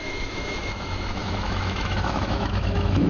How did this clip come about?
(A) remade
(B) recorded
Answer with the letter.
A